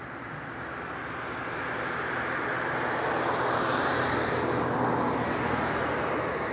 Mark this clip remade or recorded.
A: recorded